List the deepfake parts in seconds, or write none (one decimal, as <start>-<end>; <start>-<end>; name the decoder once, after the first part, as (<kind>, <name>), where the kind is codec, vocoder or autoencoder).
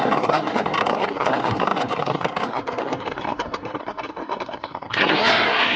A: 0.0-5.8 (codec, SNAC)